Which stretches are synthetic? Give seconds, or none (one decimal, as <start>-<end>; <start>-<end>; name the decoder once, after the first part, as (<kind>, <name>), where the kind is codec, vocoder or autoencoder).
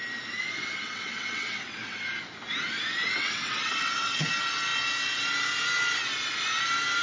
0.7-2.0 (vocoder, WaveNeXt); 3.0-4.3